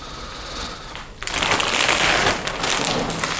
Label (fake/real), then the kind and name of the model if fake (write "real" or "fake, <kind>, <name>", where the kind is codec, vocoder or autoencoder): real